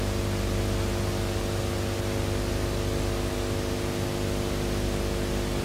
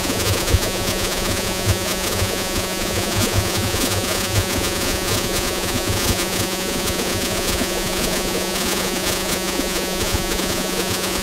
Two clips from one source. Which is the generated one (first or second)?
second